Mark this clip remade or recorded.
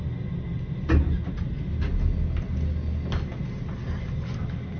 recorded